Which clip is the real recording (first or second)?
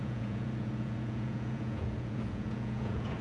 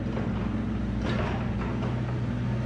second